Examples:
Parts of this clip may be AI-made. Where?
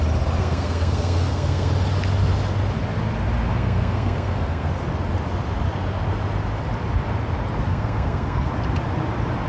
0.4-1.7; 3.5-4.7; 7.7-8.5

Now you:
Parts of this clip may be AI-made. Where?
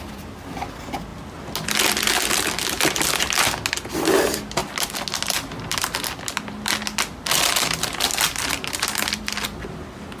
none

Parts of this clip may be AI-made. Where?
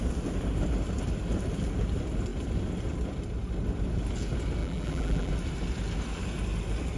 4.6-5.3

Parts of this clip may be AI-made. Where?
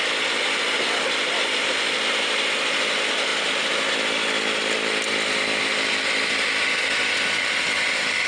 none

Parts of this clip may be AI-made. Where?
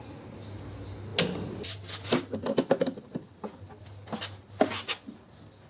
none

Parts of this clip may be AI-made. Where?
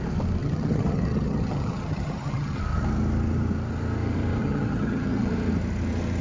0.4-2.6; 4.4-5.3